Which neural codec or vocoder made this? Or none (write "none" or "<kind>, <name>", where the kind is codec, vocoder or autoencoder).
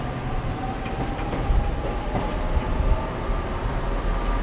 none